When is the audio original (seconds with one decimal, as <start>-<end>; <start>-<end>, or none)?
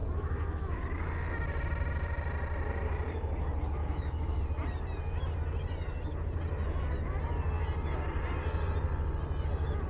0.8-3.8; 4.4-9.9